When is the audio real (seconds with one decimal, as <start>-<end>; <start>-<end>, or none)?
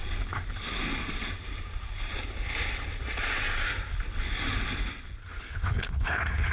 0.0-5.2